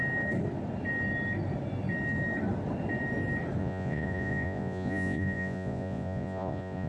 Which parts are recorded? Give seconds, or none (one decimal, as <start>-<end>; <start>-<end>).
0.0-3.6